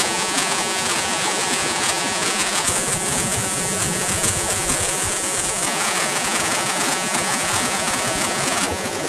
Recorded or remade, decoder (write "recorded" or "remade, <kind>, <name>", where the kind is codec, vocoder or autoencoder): remade, vocoder, Vocos